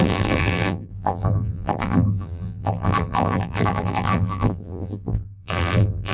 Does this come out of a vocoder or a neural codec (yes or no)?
yes